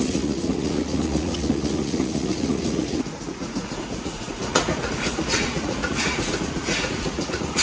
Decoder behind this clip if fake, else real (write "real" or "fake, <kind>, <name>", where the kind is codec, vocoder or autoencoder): fake, vocoder, Vocos